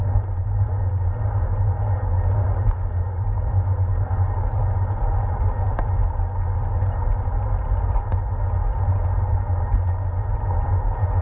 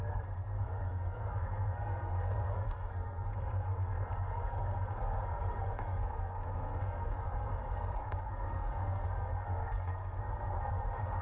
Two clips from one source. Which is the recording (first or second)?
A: first